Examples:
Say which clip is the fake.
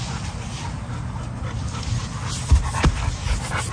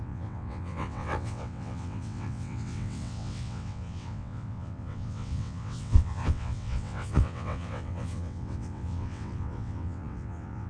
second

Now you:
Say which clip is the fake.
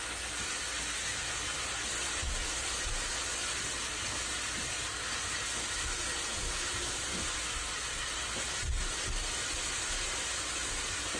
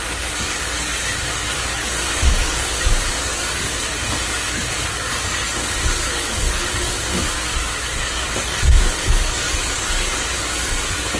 second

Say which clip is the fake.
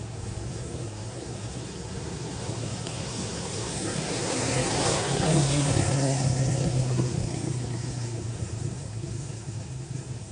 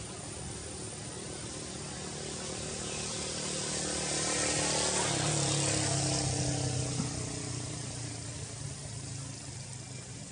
first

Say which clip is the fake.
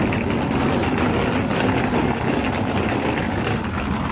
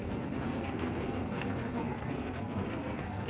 second